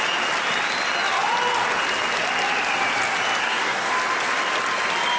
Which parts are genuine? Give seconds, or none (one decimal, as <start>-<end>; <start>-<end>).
0.0-3.4; 3.9-5.2